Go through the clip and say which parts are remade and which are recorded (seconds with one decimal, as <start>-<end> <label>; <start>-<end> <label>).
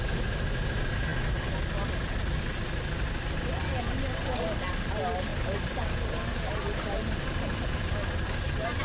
0.0-5.3 recorded; 5.3-8.8 remade